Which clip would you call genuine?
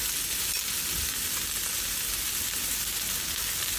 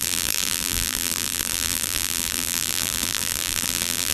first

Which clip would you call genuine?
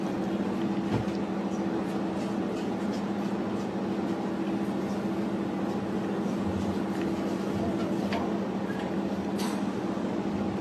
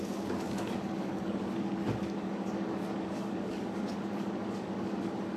first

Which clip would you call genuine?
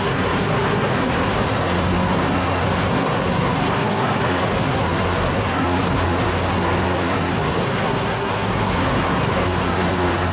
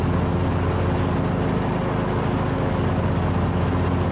second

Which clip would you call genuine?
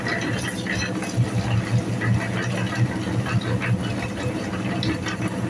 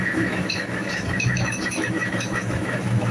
first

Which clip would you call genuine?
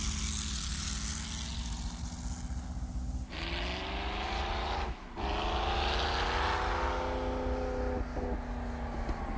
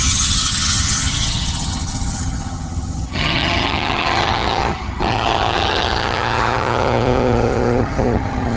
first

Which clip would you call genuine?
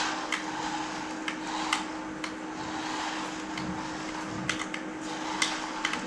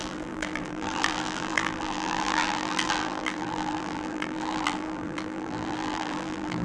first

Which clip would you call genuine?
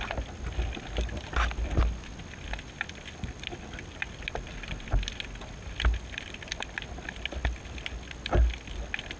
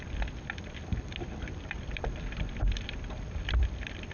first